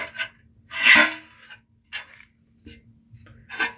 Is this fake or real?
real